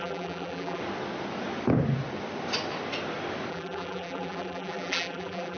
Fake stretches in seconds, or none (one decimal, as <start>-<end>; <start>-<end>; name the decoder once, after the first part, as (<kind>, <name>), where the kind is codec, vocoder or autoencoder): 0.0-0.8 (vocoder, BigVGAN v2); 3.5-5.6